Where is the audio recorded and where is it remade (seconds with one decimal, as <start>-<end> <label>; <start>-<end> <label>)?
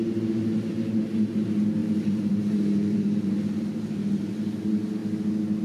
0.0-1.8 recorded; 1.8-3.3 remade; 3.3-5.6 recorded